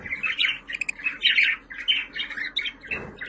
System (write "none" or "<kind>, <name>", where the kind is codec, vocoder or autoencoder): none